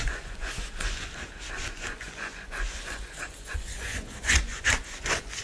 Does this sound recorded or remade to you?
remade